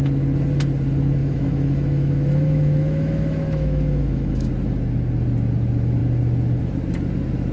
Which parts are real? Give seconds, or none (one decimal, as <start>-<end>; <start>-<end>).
0.0-1.2; 4.5-7.5